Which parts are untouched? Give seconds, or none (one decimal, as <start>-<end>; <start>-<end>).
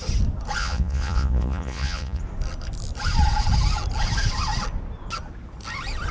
0.0-0.6; 2.2-6.1